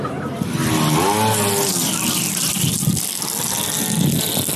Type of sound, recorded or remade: recorded